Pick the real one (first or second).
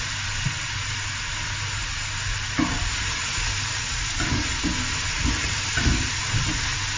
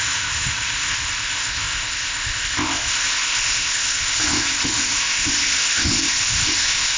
first